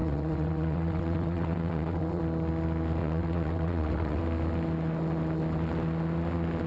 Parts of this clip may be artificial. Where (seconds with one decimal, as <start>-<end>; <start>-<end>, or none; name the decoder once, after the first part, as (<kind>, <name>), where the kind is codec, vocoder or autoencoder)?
0.0-2.2 (vocoder, WaveNeXt); 3.0-4.2